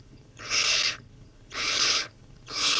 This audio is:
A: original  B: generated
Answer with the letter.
B